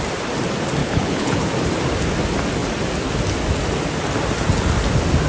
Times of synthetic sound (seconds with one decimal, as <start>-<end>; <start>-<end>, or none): 0.8-1.4

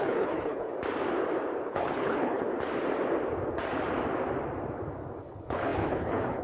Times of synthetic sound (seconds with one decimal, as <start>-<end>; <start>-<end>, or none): 0.0-0.7; 1.7-2.5; 5.2-6.4

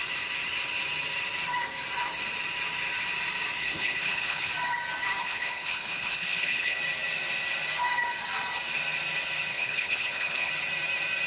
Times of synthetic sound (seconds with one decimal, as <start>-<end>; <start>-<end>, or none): 3.6-4.5; 5.2-6.8; 9.5-10.5

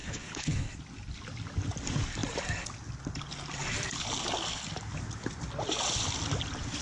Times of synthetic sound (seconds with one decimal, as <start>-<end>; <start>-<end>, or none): 0.0-0.7

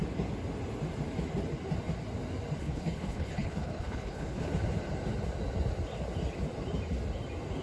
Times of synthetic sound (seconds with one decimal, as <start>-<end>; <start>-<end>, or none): 2.6-4.5